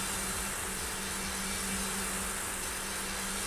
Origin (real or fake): real